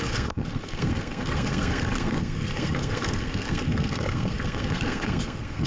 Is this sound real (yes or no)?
no